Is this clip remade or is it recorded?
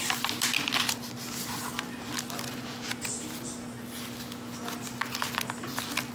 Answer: recorded